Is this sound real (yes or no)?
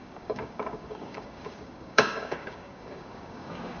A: no